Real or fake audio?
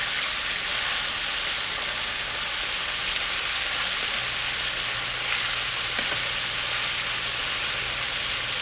real